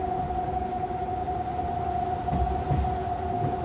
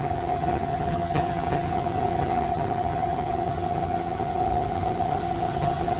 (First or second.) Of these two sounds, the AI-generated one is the second